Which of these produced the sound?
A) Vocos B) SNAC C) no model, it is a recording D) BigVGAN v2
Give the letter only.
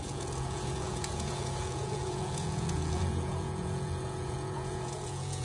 A